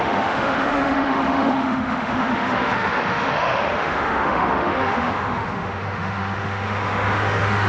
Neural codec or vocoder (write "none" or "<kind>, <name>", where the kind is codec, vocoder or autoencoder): autoencoder, DAC-VAE